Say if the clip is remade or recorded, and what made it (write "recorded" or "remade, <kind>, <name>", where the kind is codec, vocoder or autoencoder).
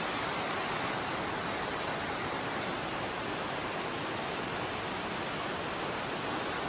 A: recorded